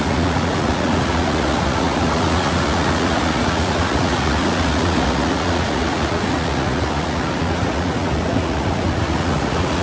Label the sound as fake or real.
fake